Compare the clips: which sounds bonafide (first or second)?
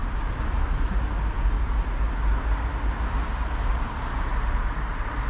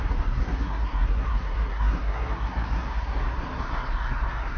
first